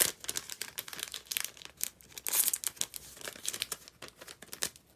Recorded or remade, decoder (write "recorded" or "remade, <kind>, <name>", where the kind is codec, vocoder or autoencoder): recorded